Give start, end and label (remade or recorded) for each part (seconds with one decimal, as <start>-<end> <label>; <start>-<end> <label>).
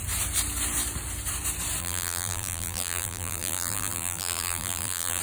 0.0-1.8 recorded; 1.8-5.2 remade